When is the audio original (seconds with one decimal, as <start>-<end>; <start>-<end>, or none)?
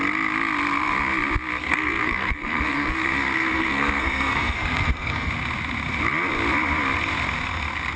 0.0-1.6; 5.3-8.0